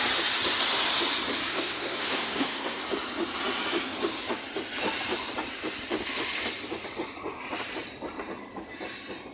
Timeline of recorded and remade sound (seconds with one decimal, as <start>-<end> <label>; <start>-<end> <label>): 0.0-1.5 recorded; 1.5-2.8 remade; 2.8-9.3 recorded